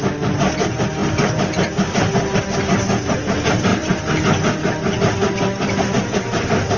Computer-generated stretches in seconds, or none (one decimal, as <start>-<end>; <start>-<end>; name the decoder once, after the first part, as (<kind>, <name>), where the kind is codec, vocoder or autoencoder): none